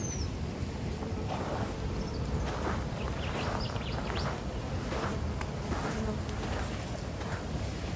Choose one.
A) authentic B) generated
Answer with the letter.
A